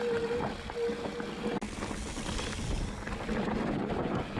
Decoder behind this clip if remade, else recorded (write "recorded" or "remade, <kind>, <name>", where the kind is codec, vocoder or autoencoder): recorded